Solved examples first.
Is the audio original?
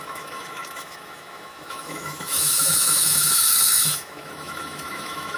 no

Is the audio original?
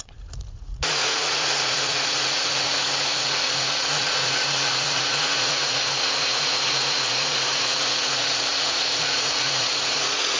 no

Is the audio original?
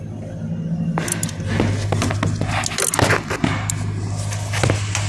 yes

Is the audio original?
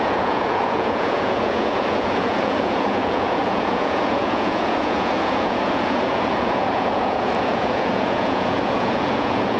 no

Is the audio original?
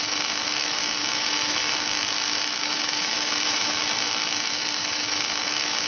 no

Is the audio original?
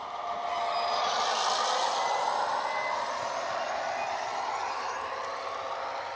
yes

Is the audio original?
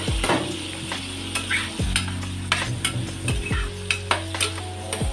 yes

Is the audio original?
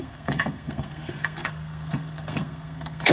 no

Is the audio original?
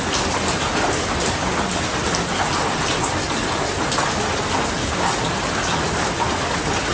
yes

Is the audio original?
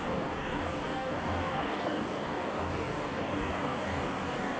no